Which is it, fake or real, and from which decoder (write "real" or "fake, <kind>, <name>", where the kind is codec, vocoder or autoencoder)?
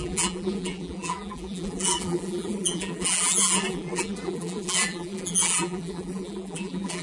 fake, vocoder, BigVGAN v2